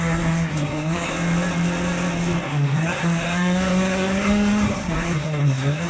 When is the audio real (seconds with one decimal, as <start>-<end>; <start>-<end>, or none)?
1.1-2.4

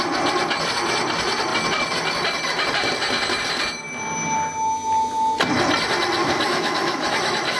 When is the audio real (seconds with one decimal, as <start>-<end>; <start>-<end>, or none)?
0.0-6.2

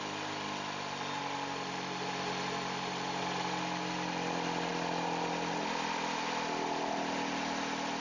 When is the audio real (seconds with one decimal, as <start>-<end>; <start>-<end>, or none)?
0.0-8.0

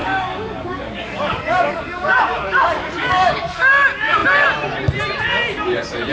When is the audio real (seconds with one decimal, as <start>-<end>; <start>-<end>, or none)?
3.7-6.1

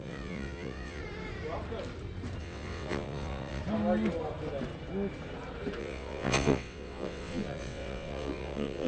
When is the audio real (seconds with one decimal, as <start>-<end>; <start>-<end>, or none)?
1.0-2.4; 3.6-5.8

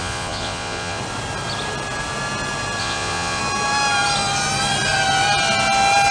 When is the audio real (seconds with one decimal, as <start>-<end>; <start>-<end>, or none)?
1.0-2.8; 3.4-6.1

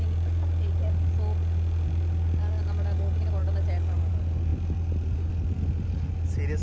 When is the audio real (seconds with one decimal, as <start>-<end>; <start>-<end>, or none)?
0.0-6.6